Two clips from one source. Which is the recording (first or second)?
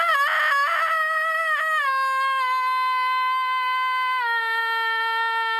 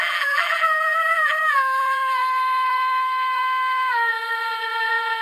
first